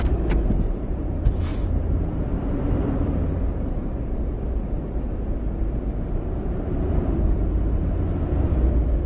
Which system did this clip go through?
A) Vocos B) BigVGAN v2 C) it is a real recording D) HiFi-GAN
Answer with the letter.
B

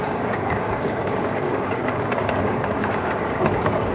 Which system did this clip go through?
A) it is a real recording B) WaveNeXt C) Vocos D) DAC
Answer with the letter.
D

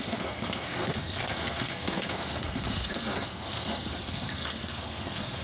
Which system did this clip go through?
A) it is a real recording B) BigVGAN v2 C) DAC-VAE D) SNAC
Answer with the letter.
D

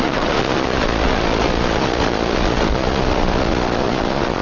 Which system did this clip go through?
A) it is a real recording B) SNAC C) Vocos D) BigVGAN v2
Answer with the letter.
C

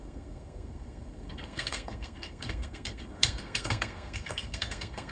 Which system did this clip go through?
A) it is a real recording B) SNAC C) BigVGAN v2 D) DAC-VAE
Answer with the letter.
B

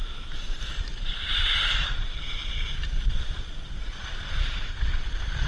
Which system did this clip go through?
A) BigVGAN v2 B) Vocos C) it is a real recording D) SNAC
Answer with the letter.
A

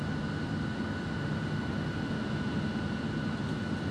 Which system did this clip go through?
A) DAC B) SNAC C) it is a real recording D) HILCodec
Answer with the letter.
C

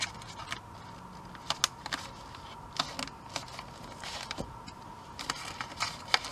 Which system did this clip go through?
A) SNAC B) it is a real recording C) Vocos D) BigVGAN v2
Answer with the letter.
B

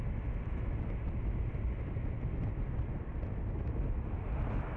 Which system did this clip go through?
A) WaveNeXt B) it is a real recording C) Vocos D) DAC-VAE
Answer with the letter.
B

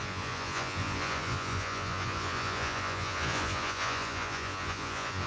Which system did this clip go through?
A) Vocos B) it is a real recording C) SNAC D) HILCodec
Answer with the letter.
A